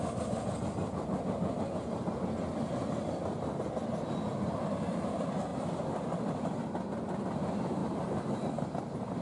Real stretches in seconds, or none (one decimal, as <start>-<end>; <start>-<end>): 0.0-7.8; 8.5-9.2